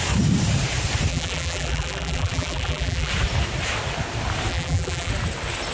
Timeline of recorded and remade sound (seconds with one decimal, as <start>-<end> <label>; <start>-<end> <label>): 0.0-1.1 recorded; 1.1-3.1 remade; 3.1-4.5 recorded; 4.5-5.1 remade; 5.1-5.7 recorded